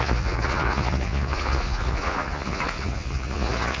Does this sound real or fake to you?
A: fake